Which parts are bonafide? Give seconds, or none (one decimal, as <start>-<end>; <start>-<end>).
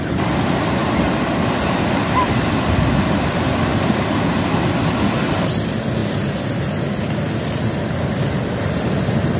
0.0-9.4